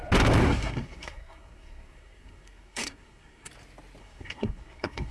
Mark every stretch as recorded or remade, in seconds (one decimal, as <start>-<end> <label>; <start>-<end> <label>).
0.0-0.4 recorded; 0.4-3.5 remade; 3.5-4.0 recorded; 4.0-5.1 remade